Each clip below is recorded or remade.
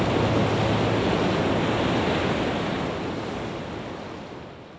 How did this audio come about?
recorded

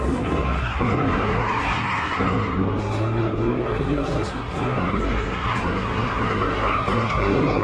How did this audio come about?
remade